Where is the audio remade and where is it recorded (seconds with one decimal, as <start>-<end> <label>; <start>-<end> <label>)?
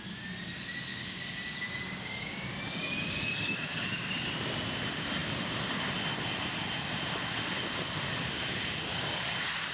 0.0-0.9 recorded; 0.9-4.3 remade; 4.3-9.7 recorded